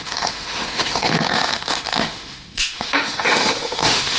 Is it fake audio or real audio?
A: fake